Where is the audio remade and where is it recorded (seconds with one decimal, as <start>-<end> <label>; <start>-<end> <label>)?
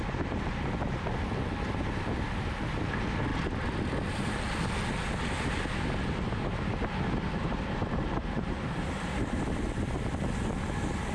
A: 0.0-7.8 recorded; 7.8-9.4 remade; 9.4-11.1 recorded